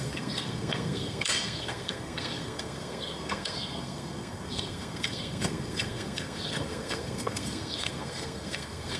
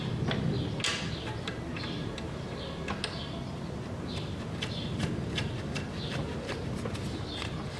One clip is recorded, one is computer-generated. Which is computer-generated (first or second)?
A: first